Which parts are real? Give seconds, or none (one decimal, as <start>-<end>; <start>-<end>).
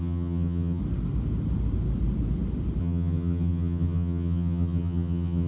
0.8-2.8